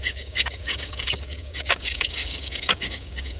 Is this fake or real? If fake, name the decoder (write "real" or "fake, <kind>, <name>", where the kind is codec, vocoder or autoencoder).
fake, codec, DAC